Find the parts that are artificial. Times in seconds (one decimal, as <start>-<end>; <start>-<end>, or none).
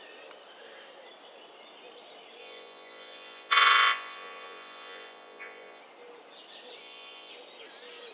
2.4-5.8; 6.8-7.3